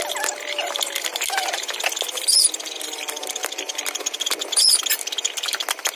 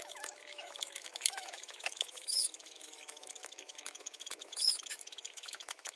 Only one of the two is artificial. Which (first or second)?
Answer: second